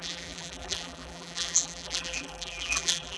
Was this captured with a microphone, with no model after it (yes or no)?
no